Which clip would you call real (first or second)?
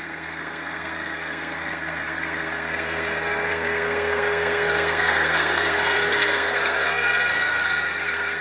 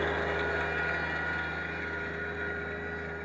second